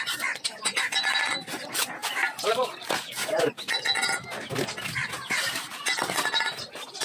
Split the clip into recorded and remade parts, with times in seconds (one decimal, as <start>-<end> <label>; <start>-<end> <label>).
0.0-2.0 remade; 2.0-6.2 recorded; 6.2-7.0 remade